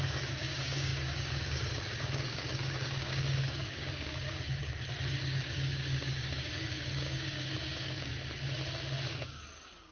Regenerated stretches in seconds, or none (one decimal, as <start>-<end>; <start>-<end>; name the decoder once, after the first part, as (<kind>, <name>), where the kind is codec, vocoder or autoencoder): 0.0-4.6 (codec, DAC); 5.2-8.1; 9.1-9.9